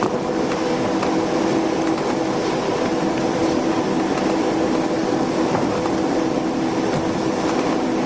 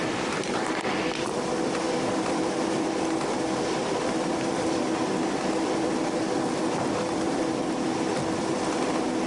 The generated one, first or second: second